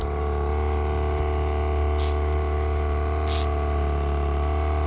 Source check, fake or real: real